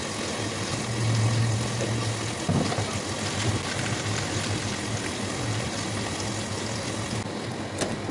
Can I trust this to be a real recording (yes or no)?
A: yes